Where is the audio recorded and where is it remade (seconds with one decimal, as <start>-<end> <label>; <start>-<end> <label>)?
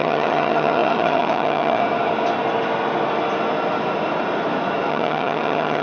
0.0-1.8 remade; 1.8-4.9 recorded; 4.9-5.8 remade